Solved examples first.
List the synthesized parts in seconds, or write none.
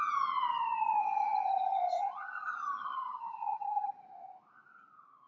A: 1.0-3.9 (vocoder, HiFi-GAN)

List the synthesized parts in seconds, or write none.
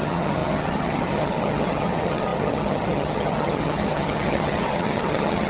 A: 0.0-5.5 (vocoder, HiFi-GAN)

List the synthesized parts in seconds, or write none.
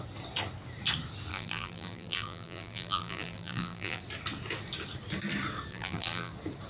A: 1.3-4.0 (vocoder, BigVGAN v2); 5.7-6.3